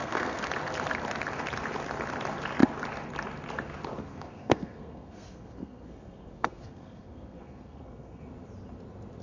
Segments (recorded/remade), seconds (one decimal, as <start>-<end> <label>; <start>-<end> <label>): 0.0-0.5 remade; 0.5-4.0 recorded; 4.0-8.2 remade; 8.2-9.2 recorded